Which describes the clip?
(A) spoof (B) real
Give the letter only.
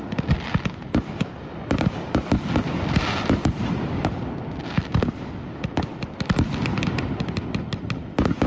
B